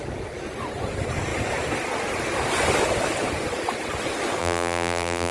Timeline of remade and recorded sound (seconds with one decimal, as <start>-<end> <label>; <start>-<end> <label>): 0.0-4.4 recorded; 4.4-5.3 remade